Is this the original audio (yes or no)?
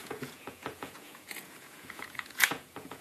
no